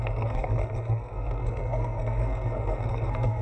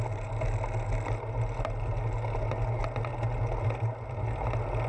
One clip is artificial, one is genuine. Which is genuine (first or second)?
second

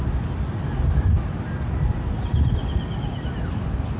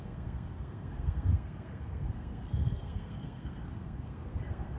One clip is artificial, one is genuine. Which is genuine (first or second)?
first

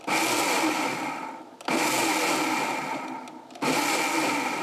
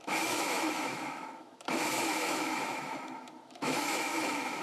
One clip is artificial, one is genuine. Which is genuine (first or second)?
first